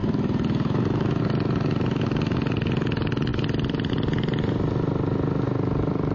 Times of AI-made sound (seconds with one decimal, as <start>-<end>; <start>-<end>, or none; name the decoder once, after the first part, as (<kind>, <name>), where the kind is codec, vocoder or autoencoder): 0.0-1.2 (autoencoder, DAC-VAE)